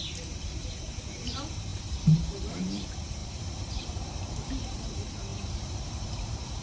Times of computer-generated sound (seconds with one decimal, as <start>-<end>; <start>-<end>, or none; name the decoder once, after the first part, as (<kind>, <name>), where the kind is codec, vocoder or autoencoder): 0.0-6.6 (vocoder, BigVGAN v2)